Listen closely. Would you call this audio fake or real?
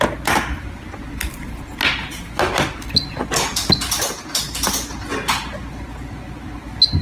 real